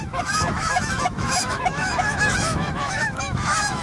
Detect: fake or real fake